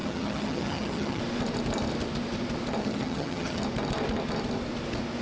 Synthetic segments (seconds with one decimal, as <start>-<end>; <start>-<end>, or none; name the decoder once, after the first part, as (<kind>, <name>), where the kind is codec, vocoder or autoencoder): 0.0-1.2 (vocoder, HiFi-GAN); 2.8-3.6